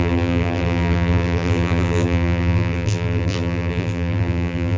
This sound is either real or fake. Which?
fake